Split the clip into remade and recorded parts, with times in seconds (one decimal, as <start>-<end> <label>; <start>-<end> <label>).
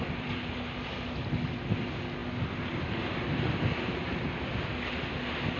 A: 0.0-5.6 recorded